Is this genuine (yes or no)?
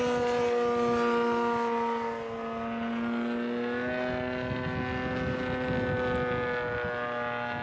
yes